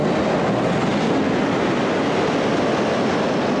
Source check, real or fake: real